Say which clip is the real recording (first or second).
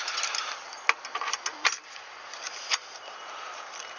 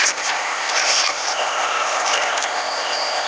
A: first